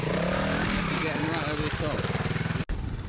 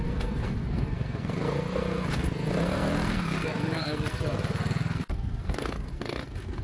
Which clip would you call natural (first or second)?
first